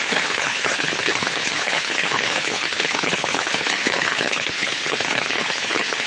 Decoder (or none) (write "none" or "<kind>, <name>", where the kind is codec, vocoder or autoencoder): codec, HILCodec